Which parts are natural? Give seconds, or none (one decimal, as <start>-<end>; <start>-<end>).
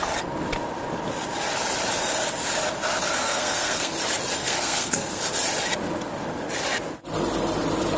0.0-3.2; 3.9-4.4; 5.2-8.0